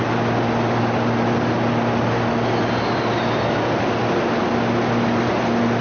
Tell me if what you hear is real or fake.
real